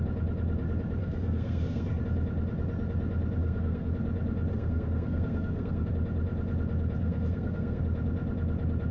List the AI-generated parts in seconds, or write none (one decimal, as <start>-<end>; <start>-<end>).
1.0-2.0; 3.4-3.9; 4.5-5.9; 7.0-7.8